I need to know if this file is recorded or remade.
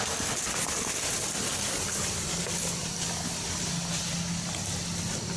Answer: recorded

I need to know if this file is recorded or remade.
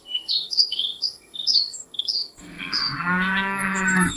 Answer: remade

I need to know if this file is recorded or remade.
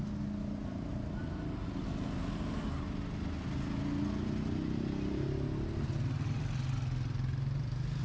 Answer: recorded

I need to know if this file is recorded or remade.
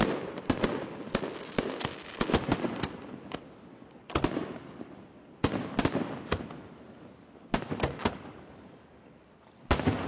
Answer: recorded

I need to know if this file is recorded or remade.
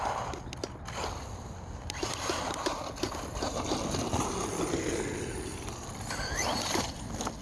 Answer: recorded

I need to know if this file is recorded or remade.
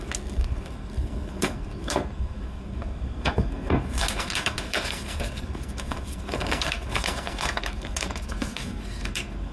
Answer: remade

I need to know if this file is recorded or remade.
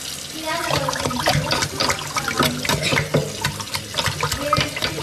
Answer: recorded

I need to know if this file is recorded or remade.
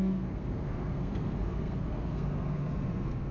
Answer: remade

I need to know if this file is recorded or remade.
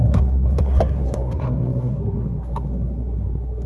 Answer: remade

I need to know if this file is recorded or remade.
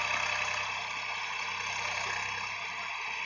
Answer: recorded